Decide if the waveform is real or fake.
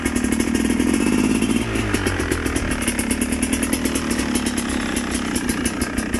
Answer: real